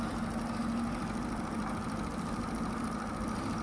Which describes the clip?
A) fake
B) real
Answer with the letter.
B